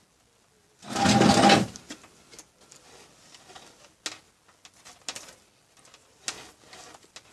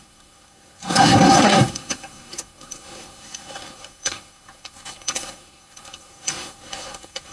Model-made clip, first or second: second